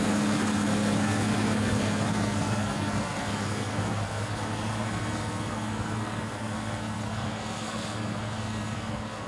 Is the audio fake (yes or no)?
yes